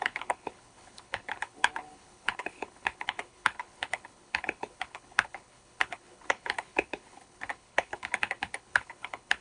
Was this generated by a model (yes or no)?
yes